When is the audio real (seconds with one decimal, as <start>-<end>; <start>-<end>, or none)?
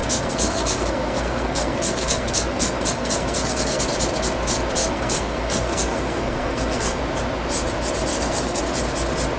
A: 3.8-4.8; 7.0-8.1; 8.6-9.4